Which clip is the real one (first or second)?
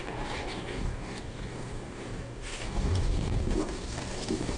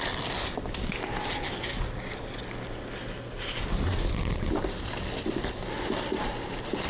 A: second